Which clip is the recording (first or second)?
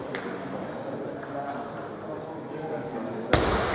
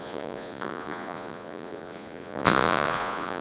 first